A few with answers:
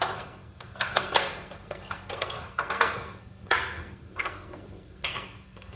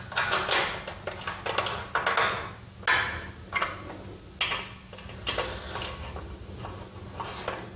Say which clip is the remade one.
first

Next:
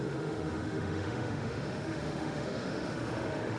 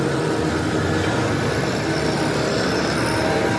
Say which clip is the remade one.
first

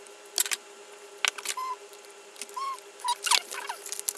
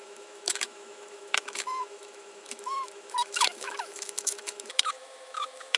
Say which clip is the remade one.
second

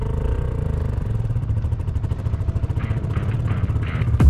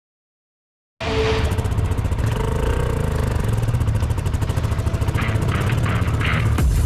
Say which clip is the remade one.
first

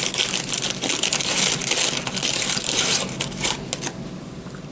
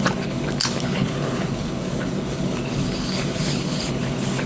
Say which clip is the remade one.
second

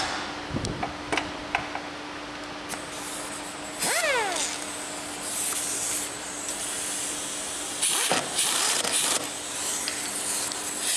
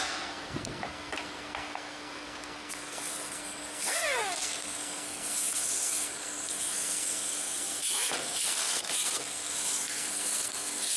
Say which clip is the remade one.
second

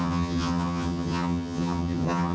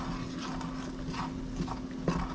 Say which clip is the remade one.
first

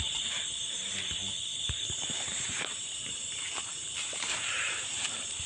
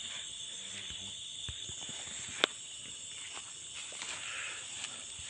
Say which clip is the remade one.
first